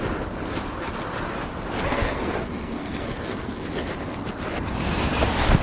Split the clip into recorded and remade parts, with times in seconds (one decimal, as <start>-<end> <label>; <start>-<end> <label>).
0.0-1.9 recorded; 1.9-3.6 remade; 3.6-5.6 recorded